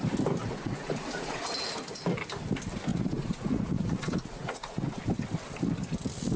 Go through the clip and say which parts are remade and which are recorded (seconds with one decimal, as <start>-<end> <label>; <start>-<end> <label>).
0.0-0.4 recorded; 0.4-1.4 remade; 1.4-2.9 recorded; 2.9-5.0 remade; 5.0-6.4 recorded